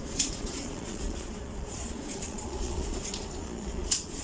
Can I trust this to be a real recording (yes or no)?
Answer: no